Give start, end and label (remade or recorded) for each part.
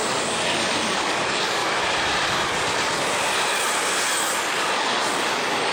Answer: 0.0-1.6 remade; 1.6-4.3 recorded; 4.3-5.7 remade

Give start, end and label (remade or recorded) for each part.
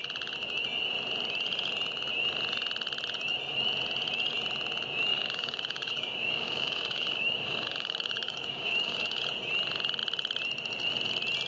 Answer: 0.0-5.1 recorded; 5.1-9.2 remade; 9.2-11.5 recorded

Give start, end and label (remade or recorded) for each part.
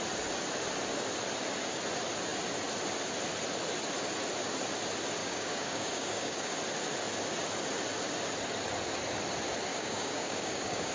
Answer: 0.0-5.2 recorded; 5.2-6.6 remade; 6.6-9.7 recorded; 9.7-10.9 remade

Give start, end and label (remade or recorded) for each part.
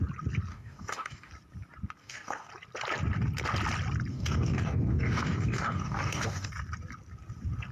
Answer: 0.0-0.5 recorded; 0.5-1.3 remade; 1.3-2.0 recorded; 2.0-2.5 remade; 2.5-4.1 recorded; 4.1-6.5 remade; 6.5-7.7 recorded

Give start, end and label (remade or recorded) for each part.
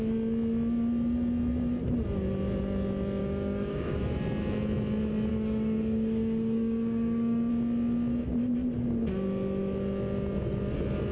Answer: 0.0-3.2 recorded; 3.2-4.0 remade; 4.0-5.3 recorded; 5.3-7.5 remade; 7.5-11.1 recorded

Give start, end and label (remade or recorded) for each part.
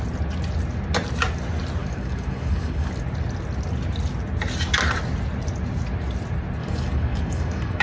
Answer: 0.0-1.8 recorded; 1.8-2.9 remade; 2.9-6.6 recorded; 6.6-7.8 remade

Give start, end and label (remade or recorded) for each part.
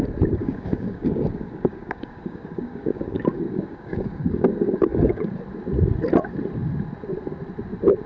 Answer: 0.0-0.4 recorded; 0.4-5.3 remade; 5.3-8.1 recorded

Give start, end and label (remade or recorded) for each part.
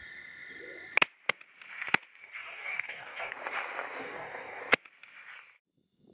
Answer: 0.0-2.2 recorded; 2.2-3.3 remade; 3.3-4.0 recorded; 4.0-4.6 remade; 4.6-6.1 recorded